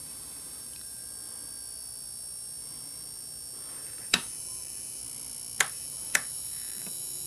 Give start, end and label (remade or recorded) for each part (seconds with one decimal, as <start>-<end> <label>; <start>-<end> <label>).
0.0-1.0 remade; 1.0-3.7 recorded; 3.7-5.0 remade; 5.0-5.7 recorded; 5.7-7.3 remade